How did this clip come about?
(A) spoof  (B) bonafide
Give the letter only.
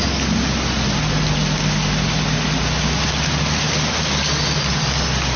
B